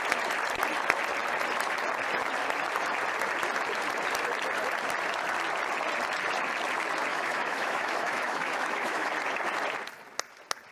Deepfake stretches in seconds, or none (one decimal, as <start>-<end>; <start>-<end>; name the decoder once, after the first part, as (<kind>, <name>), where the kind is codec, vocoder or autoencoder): 7.1-9.1 (autoencoder, DAC-VAE)